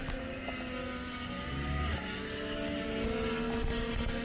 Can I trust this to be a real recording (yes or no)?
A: yes